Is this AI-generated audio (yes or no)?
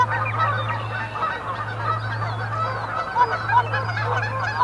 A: no